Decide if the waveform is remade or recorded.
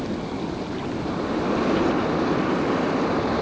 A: recorded